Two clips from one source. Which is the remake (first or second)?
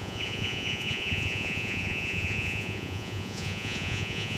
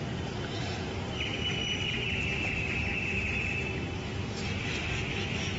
first